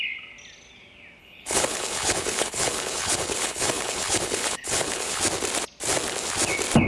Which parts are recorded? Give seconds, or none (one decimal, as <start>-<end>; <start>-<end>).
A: 0.0-1.2; 5.2-6.9